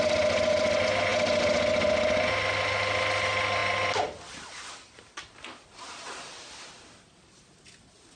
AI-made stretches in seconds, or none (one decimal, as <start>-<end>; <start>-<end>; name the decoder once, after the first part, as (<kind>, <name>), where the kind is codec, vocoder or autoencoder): none